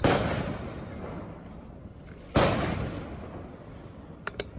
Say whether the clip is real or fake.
real